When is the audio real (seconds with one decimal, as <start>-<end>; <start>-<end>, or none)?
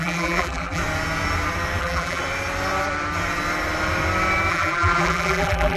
0.8-1.8; 2.2-4.5